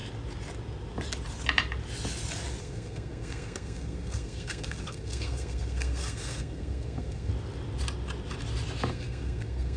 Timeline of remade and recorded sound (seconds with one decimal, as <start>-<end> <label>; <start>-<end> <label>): 0.0-2.6 recorded; 2.6-7.3 remade; 7.3-8.9 recorded; 8.9-9.8 remade